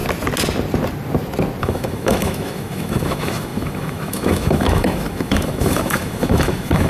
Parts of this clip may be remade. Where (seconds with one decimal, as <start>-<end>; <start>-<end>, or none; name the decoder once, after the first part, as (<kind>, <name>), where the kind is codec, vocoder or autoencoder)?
1.6-6.9 (autoencoder, DAC-VAE)